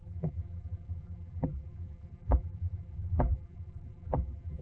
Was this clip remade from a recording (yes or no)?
yes